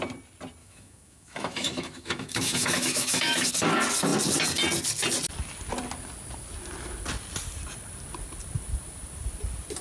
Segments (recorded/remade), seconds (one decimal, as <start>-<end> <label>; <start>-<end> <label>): 0.0-0.6 recorded; 0.6-3.5 remade; 3.5-9.8 recorded